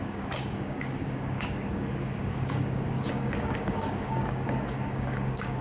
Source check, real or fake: fake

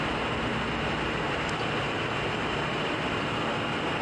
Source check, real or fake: real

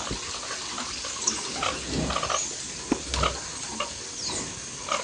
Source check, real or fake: real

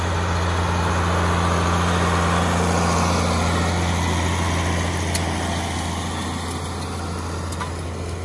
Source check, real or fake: real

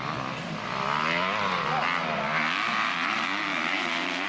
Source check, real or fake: real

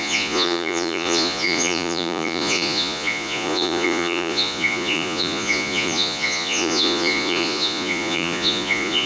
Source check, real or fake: fake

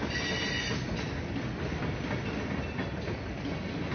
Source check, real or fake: real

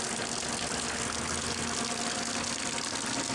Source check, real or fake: real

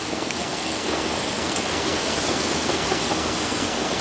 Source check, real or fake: fake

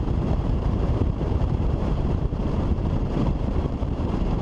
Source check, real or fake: fake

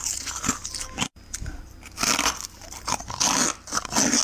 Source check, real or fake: real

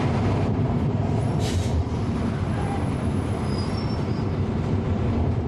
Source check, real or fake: fake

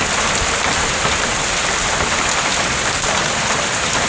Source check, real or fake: real